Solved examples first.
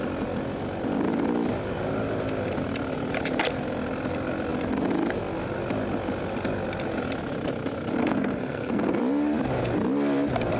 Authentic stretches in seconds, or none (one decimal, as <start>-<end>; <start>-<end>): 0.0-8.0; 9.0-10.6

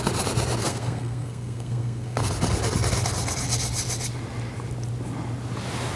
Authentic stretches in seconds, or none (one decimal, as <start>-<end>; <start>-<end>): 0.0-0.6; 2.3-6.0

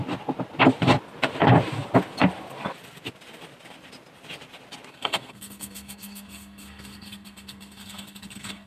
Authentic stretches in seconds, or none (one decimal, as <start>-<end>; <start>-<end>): 0.0-4.9

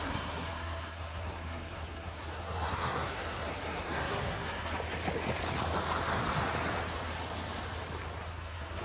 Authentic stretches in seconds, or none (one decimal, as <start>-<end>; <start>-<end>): 4.7-8.3

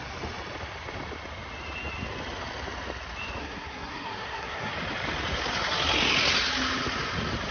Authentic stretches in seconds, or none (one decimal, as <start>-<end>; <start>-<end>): 0.0-3.4; 4.7-7.5